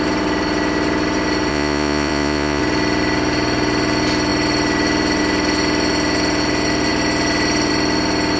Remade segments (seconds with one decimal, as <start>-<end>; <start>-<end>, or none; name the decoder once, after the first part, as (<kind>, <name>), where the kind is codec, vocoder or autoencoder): 1.5-2.6 (vocoder, Vocos)